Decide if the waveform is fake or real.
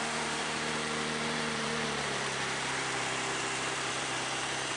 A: fake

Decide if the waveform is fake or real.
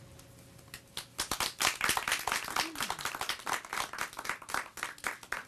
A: real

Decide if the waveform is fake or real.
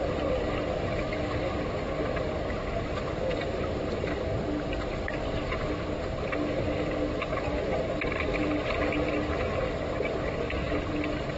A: real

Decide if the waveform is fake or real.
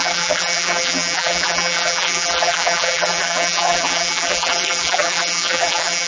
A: fake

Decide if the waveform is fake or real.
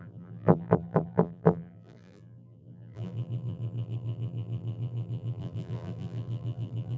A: fake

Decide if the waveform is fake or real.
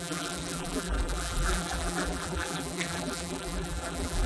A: fake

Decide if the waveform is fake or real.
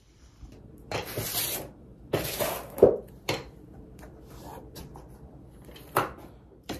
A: fake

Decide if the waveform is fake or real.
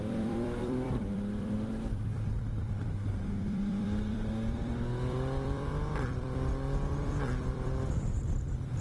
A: fake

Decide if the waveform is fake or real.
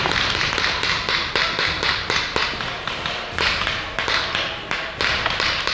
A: fake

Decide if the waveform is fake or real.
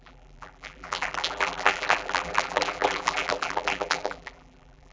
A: fake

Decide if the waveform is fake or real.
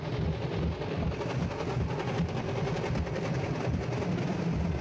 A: fake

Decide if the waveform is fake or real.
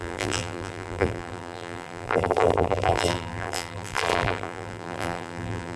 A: fake